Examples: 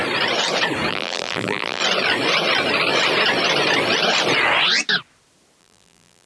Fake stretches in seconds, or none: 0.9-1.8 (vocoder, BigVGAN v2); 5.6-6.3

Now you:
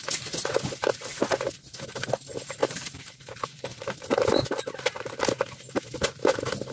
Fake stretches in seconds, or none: 2.6-3.8 (vocoder, BigVGAN v2); 4.4-5.2

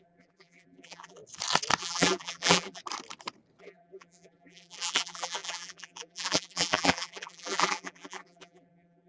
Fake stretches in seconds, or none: 0.0-1.2 (vocoder, BigVGAN v2); 1.8-2.8; 3.6-9.1

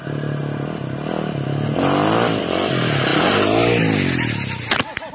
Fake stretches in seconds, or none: 0.0-0.4 (vocoder, BigVGAN v2); 2.4-3.1